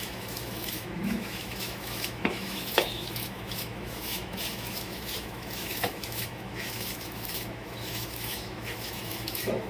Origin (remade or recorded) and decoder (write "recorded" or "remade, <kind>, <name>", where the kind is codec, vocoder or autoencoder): remade, autoencoder, DAC-VAE